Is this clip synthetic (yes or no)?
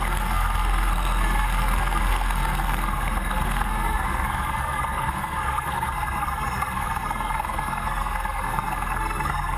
yes